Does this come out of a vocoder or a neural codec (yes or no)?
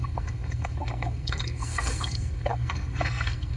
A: yes